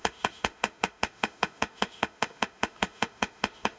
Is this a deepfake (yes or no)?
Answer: yes